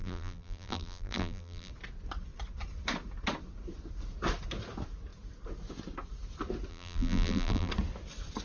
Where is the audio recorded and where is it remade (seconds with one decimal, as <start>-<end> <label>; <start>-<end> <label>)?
0.0-1.7 remade; 1.7-6.7 recorded; 6.7-7.7 remade; 7.7-8.4 recorded